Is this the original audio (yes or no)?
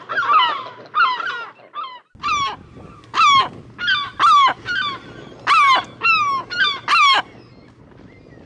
yes